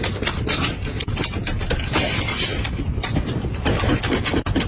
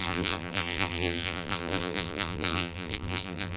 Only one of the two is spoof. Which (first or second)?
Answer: second